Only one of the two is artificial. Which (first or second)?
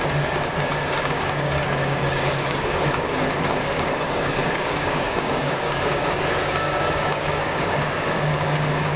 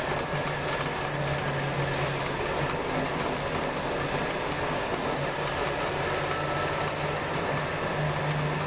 first